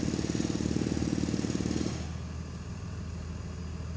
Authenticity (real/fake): real